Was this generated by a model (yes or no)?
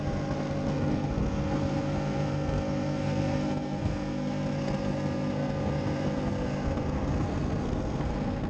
yes